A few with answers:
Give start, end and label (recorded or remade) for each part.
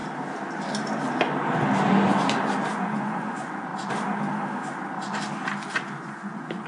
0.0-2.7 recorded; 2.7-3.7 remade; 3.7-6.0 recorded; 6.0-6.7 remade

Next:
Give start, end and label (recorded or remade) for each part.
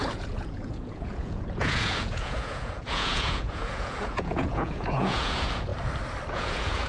0.0-5.7 remade; 5.7-6.3 recorded; 6.3-6.9 remade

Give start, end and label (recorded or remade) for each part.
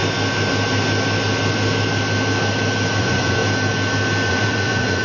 0.0-3.0 recorded; 3.0-3.4 remade; 3.4-4.3 recorded; 4.3-5.0 remade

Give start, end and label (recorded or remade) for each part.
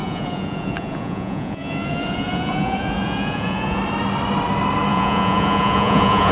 0.0-3.8 remade; 3.8-4.9 recorded; 4.9-6.3 remade